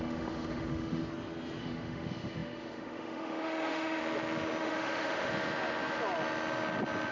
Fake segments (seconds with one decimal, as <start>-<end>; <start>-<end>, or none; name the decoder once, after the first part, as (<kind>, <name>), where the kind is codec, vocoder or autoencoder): 0.0-1.0 (autoencoder, DAC-VAE); 1.6-4.0; 4.6-5.3